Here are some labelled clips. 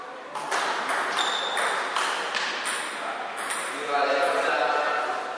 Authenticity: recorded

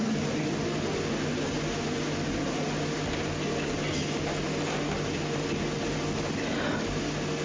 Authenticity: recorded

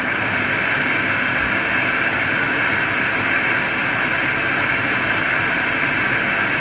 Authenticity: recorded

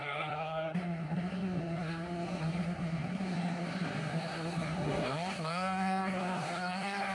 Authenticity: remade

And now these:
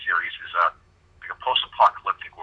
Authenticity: remade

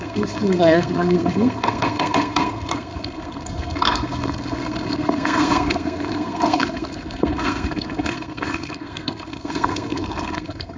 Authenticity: remade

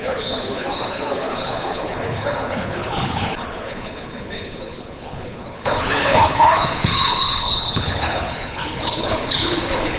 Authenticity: remade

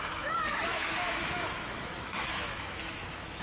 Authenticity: remade